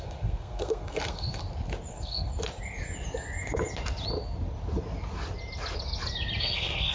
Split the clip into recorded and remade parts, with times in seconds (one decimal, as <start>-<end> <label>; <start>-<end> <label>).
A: 0.0-1.4 remade; 1.4-1.9 recorded; 1.9-2.3 remade; 2.3-6.4 recorded; 6.4-6.9 remade